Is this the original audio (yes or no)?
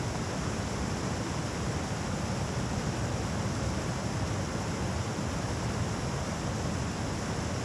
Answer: yes